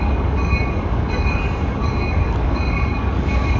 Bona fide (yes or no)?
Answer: no